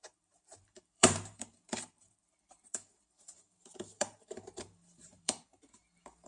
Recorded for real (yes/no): no